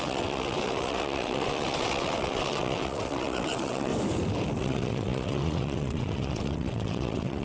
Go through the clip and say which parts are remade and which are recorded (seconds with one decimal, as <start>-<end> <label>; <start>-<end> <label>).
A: 0.0-3.9 remade; 3.9-4.6 recorded; 4.6-7.4 remade

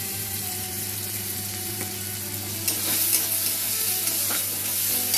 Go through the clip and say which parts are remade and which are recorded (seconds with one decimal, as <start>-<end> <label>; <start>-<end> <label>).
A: 0.0-1.8 remade; 1.8-5.2 recorded